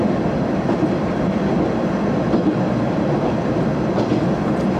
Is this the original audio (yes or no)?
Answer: yes